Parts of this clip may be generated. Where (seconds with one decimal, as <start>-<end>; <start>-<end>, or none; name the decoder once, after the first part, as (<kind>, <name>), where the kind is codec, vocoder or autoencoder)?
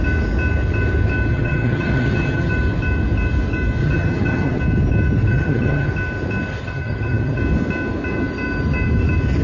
1.3-2.5 (vocoder, HiFi-GAN); 3.8-4.6; 5.3-5.9; 6.6-7.4